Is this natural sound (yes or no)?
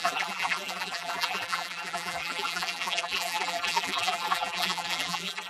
no